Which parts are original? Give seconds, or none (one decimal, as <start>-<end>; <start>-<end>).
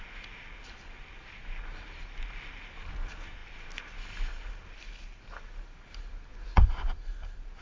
0.0-6.3; 6.9-7.6